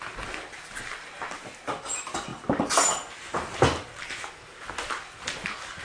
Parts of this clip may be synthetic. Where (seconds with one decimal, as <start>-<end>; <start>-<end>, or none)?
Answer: none